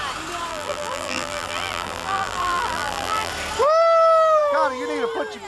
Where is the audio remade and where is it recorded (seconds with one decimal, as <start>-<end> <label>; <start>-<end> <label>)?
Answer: 0.0-0.5 recorded; 0.5-3.3 remade; 3.3-5.5 recorded